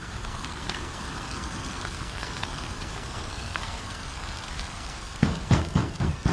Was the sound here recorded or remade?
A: remade